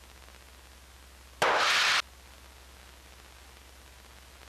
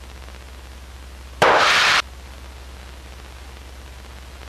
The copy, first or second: second